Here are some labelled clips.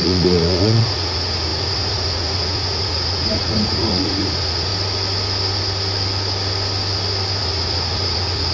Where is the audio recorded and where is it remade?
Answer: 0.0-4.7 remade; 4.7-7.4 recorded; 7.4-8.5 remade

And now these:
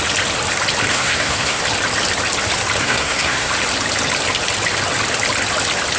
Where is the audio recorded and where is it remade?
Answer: 0.0-0.9 recorded; 0.9-1.6 remade; 1.6-2.8 recorded; 2.8-3.5 remade; 3.5-6.0 recorded

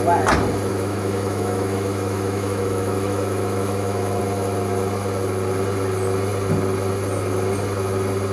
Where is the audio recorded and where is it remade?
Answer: 0.0-0.7 recorded; 0.7-4.2 remade; 4.2-8.3 recorded

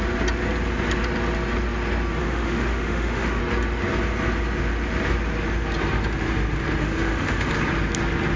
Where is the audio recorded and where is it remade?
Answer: 0.0-2.2 recorded; 2.2-3.4 remade; 3.4-6.8 recorded; 6.8-7.5 remade; 7.5-8.4 recorded

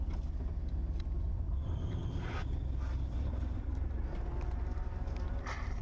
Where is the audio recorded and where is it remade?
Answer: 0.0-5.8 remade

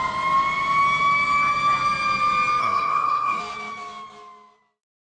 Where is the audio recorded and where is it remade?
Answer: 0.0-2.6 recorded; 2.6-3.4 remade; 3.4-5.0 recorded

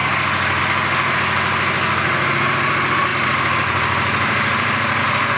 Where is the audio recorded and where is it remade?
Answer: 0.0-3.1 recorded; 3.1-5.0 remade; 5.0-5.4 recorded

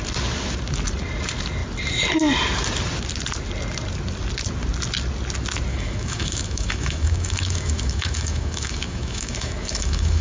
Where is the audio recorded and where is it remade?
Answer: 0.0-5.7 recorded; 5.7-10.2 remade